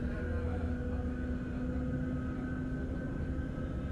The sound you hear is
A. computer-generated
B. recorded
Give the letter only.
B